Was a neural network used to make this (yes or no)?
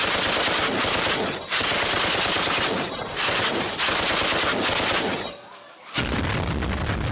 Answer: no